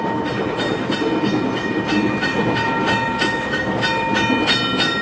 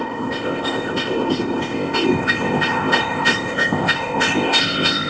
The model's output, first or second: second